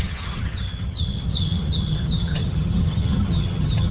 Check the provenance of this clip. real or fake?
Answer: fake